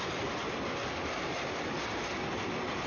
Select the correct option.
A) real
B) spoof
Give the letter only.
A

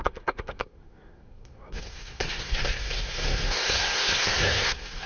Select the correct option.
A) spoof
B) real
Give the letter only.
A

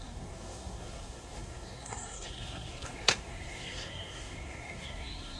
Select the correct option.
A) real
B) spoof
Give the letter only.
B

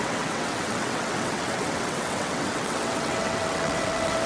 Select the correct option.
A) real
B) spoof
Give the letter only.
B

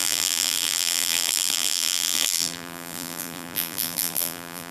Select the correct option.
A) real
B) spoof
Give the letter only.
B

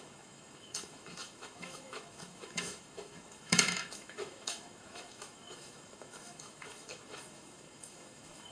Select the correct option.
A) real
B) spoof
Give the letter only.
B